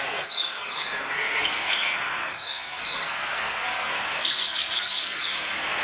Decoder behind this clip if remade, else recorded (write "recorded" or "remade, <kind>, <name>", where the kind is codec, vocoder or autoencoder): remade, codec, SNAC